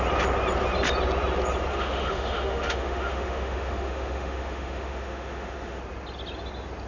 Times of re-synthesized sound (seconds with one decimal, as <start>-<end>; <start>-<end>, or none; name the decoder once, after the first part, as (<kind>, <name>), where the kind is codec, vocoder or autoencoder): 1.7-5.8 (autoencoder, DAC-VAE)